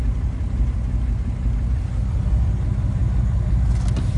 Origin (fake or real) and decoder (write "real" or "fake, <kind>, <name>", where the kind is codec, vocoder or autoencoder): real